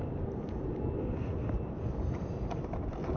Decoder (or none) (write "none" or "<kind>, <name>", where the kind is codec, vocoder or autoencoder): none